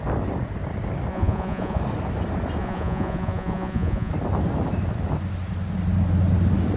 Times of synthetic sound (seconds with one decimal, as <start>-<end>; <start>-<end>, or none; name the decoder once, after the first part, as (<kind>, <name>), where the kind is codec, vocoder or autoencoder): 1.1-1.8 (vocoder, Vocos); 2.6-4.1